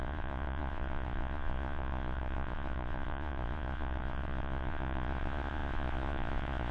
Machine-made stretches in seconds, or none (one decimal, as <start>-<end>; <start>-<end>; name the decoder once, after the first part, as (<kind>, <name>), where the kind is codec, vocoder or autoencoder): 0.0-6.7 (vocoder, Vocos)